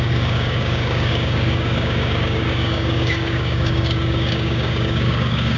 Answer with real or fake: fake